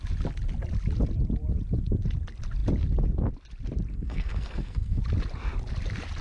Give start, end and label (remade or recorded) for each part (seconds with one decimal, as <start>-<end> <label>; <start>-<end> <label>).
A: 0.0-3.9 recorded; 3.9-5.0 remade; 5.0-6.2 recorded